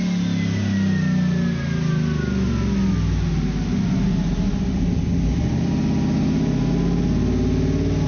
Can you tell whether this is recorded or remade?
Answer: recorded